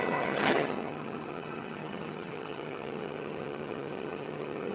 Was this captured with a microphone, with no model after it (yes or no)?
no